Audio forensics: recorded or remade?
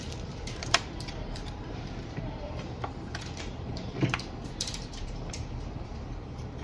remade